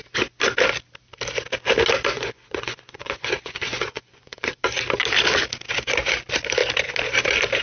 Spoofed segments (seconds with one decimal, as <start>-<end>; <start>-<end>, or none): 2.1-4.6